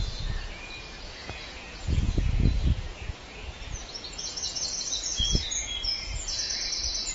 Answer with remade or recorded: remade